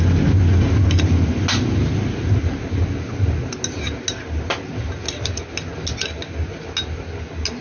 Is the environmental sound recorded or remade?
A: recorded